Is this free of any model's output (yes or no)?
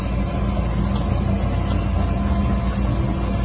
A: yes